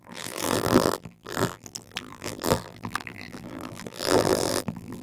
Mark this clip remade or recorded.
remade